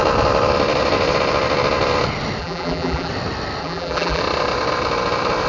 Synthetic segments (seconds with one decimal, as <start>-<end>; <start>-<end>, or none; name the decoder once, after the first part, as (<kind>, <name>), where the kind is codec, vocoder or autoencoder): 2.4-3.1 (vocoder, BigVGAN v2); 3.6-4.2